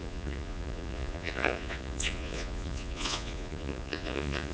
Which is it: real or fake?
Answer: fake